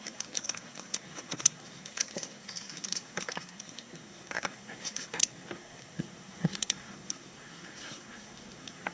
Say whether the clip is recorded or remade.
remade